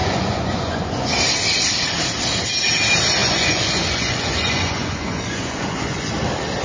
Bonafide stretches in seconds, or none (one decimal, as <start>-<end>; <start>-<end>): 1.1-3.2; 6.1-6.6